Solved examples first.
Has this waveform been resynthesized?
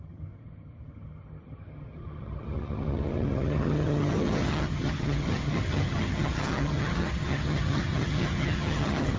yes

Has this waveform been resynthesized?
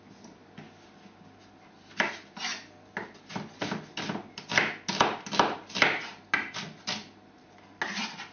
no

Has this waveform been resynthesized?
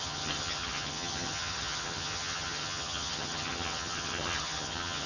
yes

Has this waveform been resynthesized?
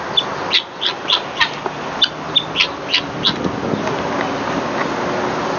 no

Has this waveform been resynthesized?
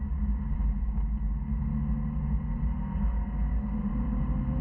no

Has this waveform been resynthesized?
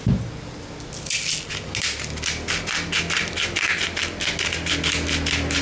no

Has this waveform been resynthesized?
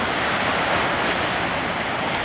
no